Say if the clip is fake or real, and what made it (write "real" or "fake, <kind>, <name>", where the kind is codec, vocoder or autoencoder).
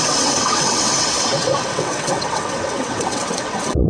fake, vocoder, WaveNeXt